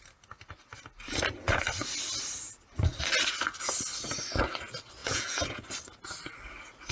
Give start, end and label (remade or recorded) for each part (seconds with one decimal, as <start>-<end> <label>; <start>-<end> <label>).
0.0-5.0 recorded; 5.0-5.6 remade; 5.6-6.9 recorded